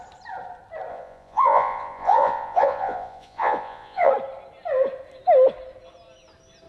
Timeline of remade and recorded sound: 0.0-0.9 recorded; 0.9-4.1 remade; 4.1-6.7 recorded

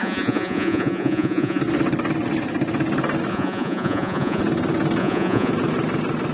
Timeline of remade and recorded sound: 0.0-1.6 remade; 1.6-3.3 recorded; 3.3-4.4 remade; 4.4-5.0 recorded; 5.0-5.5 remade; 5.5-6.3 recorded

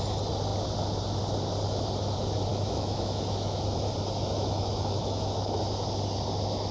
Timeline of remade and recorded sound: 0.0-2.5 recorded; 2.5-3.6 remade; 3.6-4.2 recorded; 4.2-5.6 remade; 5.6-6.7 recorded

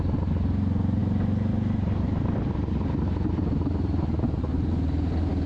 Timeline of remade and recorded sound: 0.0-5.5 recorded

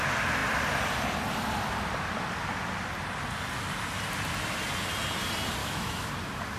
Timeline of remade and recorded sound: 0.0-5.6 recorded; 5.6-6.1 remade; 6.1-6.6 recorded

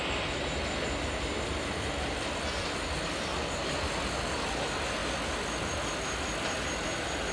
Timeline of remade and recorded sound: 0.0-7.3 recorded

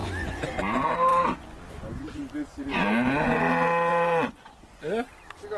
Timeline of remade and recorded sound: 0.0-0.6 remade; 0.6-1.1 recorded; 1.1-3.4 remade; 3.4-3.9 recorded; 3.9-4.8 remade; 4.8-5.6 recorded

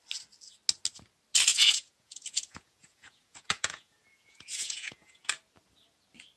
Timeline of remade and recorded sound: 0.0-1.5 recorded; 1.5-5.3 remade; 5.3-6.4 recorded